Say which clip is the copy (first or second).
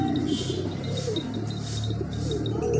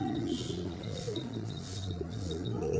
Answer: second